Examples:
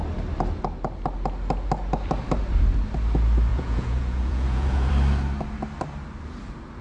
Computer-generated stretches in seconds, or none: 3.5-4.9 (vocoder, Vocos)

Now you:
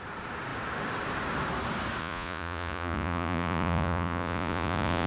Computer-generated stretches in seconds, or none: 2.0-5.1 (vocoder, Vocos)

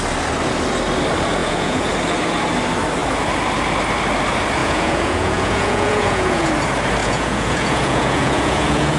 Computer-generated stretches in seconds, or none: 1.4-1.9 (vocoder, Vocos); 4.6-6.5; 7.0-9.0

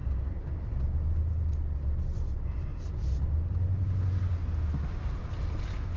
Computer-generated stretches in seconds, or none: none

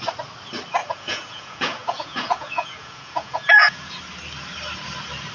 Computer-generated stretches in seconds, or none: 0.8-4.0 (vocoder, Vocos)

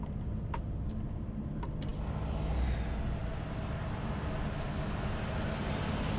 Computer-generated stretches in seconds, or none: none

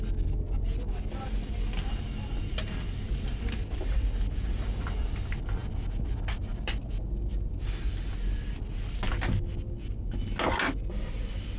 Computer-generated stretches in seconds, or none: none